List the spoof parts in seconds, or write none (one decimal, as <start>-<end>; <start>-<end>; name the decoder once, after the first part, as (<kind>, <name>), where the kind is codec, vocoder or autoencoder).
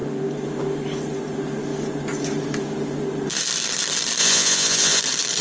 4.2-5.0 (vocoder, Vocos)